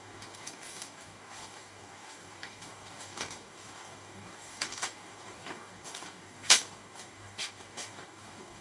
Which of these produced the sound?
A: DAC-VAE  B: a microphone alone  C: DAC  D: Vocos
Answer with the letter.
C